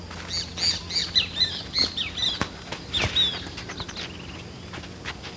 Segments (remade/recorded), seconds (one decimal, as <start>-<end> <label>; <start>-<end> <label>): 0.0-5.4 recorded